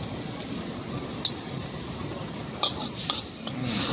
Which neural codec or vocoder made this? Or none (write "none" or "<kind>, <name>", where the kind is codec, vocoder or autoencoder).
none